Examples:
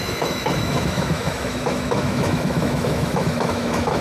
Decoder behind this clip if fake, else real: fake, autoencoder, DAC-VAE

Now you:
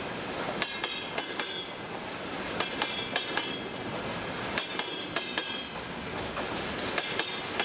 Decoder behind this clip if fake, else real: real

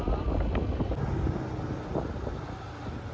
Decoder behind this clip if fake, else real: real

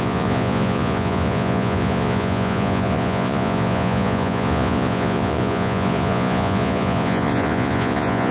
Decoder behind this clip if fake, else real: fake, vocoder, Vocos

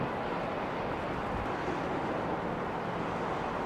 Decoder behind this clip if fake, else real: real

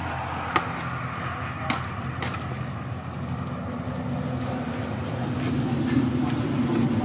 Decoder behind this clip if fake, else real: real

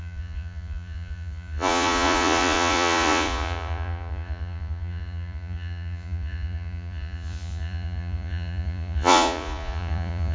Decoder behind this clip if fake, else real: fake, vocoder, Vocos